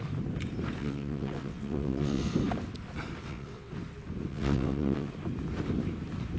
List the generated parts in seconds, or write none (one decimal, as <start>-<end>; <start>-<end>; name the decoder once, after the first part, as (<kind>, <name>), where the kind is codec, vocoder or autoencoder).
0.8-2.3 (vocoder, WaveNeXt); 3.2-3.7; 4.3-5.1